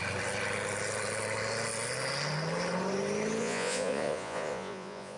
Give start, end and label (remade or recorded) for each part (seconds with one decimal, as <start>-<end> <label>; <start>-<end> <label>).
0.0-3.4 recorded; 3.4-5.2 remade